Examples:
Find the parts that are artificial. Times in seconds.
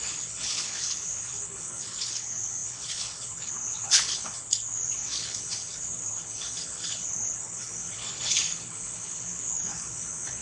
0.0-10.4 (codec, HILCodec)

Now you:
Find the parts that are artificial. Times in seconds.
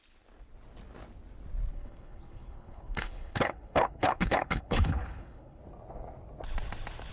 1.7-5.6 (codec, HILCodec)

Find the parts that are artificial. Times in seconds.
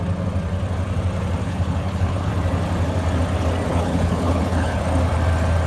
1.4-2.3 (codec, HILCodec); 3.7-4.8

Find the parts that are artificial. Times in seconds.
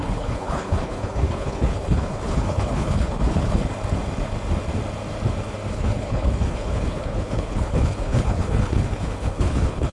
0.0-3.6 (codec, HILCodec); 5.7-9.9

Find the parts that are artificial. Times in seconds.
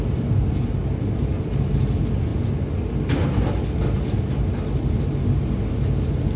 none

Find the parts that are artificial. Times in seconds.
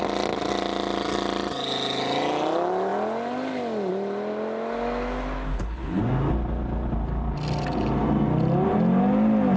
5.5-6.0 (codec, HILCodec)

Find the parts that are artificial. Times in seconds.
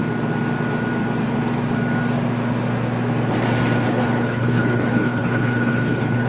3.8-6.3 (codec, HILCodec)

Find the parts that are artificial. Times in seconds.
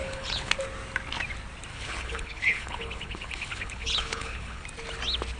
0.0-0.5 (codec, HILCodec); 1.7-4.6